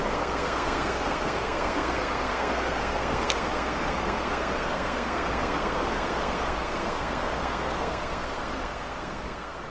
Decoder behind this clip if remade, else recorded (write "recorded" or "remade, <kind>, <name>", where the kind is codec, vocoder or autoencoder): remade, codec, SNAC